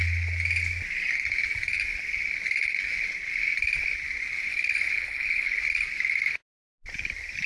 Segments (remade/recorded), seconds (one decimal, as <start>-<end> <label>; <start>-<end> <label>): 0.0-4.5 recorded; 4.5-5.6 remade; 5.6-7.5 recorded